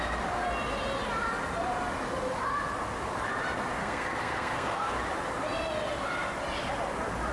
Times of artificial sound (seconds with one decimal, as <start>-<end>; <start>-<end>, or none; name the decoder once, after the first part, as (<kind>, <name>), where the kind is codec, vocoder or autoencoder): 3.8-4.9 (codec, SNAC)